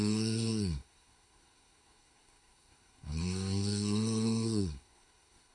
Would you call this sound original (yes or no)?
no